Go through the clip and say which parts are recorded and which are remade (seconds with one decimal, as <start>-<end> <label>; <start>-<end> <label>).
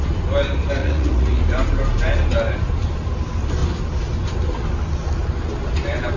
0.0-0.8 recorded; 0.8-1.4 remade; 1.4-6.2 recorded